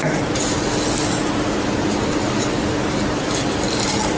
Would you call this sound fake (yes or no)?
no